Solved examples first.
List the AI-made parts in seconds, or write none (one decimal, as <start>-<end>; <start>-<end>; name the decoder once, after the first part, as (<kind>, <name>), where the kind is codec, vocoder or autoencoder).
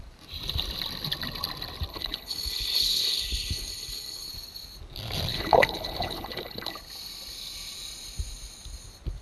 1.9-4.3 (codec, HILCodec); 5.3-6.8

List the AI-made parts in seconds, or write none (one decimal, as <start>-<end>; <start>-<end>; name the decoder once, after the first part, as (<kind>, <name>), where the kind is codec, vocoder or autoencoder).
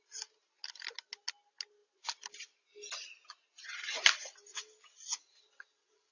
4.5-6.1 (vocoder, WaveNeXt)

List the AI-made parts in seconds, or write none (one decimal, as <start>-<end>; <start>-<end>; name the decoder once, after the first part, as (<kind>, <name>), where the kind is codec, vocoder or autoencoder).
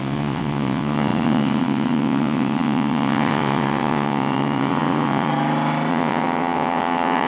0.0-5.3 (vocoder, WaveNeXt); 5.9-7.3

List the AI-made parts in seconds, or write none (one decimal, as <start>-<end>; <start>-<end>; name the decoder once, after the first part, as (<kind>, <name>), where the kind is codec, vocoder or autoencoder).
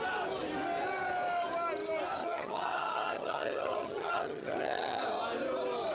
2.2-5.0 (vocoder, HiFi-GAN)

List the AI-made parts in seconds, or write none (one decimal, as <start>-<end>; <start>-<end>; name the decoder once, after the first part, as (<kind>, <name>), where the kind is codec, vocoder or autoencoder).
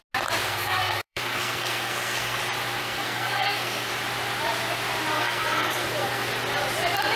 0.4-2.4 (codec, SNAC); 2.8-3.9; 5.1-6.3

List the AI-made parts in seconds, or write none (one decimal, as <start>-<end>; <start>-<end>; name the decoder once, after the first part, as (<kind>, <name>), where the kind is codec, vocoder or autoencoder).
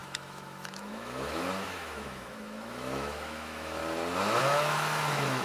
0.0-3.8 (autoencoder, DAC-VAE); 4.4-5.4